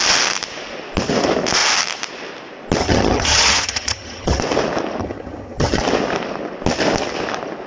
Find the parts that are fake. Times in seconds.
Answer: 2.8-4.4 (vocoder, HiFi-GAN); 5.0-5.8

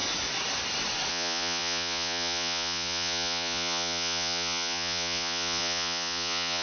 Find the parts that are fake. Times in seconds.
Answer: 1.1-6.6 (vocoder, Vocos)

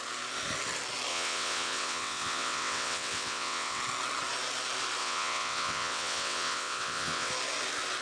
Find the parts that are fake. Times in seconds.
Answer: 1.1-3.8 (vocoder, WaveNeXt); 5.0-7.3

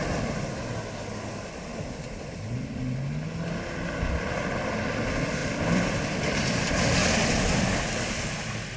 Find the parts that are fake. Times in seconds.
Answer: 5.4-6.7 (vocoder, BigVGAN v2)